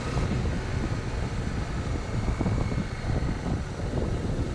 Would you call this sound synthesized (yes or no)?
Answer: no